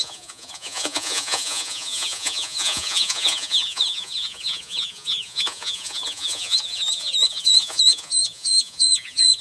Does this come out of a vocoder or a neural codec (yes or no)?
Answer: yes